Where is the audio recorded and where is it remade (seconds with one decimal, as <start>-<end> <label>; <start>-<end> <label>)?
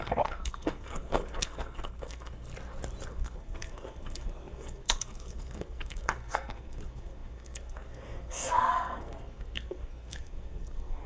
0.0-2.5 remade; 2.5-3.1 recorded; 3.1-11.1 remade